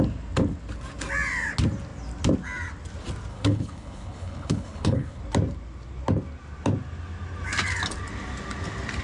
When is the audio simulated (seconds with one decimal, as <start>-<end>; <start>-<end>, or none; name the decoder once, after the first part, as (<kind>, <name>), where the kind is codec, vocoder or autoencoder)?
3.3-5.2 (codec, HILCodec)